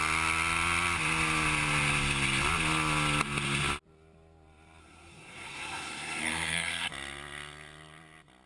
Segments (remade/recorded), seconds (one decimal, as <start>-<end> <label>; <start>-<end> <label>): 0.0-4.8 recorded; 4.8-6.9 remade; 6.9-8.5 recorded